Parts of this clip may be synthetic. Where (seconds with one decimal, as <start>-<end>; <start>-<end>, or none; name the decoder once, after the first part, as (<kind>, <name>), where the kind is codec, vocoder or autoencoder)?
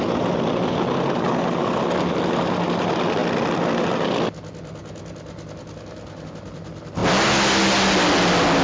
none